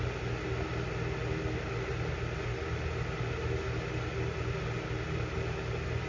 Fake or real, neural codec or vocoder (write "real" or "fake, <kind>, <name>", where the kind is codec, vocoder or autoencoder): real